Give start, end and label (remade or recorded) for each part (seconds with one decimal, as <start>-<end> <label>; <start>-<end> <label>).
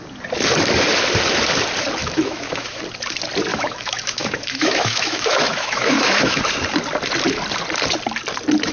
0.0-2.0 recorded; 2.0-2.8 remade; 2.8-3.5 recorded; 3.5-6.4 remade; 6.4-8.7 recorded